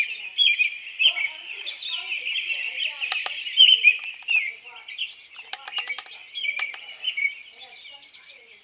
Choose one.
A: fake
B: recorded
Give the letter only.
A